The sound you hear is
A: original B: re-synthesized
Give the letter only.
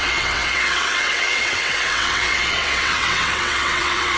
B